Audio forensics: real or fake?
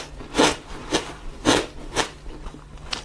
real